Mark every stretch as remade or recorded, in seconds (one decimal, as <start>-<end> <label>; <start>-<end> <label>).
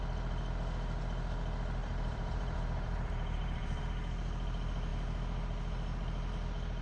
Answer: 0.0-1.8 recorded; 1.8-3.8 remade; 3.8-6.8 recorded